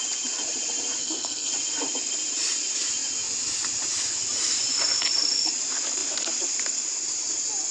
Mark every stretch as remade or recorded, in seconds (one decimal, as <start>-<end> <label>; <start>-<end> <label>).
0.0-1.0 recorded; 1.0-1.5 remade; 1.5-7.7 recorded